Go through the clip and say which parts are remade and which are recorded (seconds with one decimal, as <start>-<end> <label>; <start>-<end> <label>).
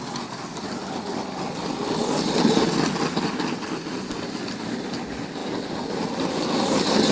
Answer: 0.0-7.1 recorded